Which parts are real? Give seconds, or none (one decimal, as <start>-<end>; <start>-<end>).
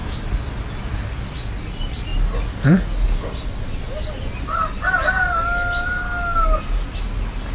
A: 0.0-7.5